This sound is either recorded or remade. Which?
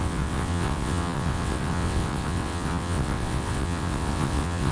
remade